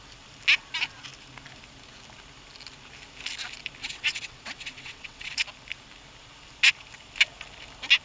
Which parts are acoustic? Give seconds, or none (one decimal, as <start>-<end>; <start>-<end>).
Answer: 0.0-3.8; 5.3-8.0